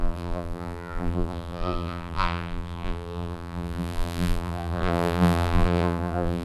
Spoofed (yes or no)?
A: yes